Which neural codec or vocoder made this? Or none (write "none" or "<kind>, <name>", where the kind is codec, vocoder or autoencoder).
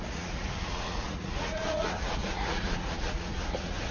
vocoder, Vocos